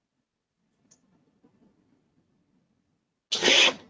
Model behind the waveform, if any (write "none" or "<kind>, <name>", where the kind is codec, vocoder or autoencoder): none